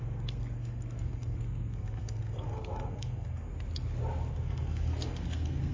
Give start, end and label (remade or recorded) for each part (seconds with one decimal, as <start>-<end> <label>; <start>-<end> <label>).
0.0-3.5 remade; 3.5-4.3 recorded; 4.3-5.7 remade